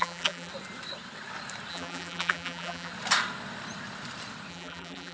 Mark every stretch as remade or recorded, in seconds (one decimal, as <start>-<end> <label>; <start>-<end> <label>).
0.0-0.5 remade; 0.5-1.7 recorded; 1.7-2.9 remade; 2.9-4.5 recorded; 4.5-5.1 remade